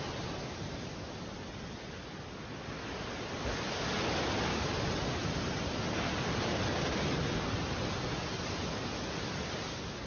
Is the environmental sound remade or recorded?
recorded